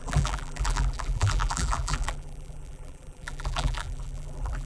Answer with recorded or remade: remade